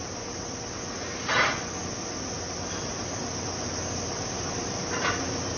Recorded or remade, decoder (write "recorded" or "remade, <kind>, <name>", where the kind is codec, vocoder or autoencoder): recorded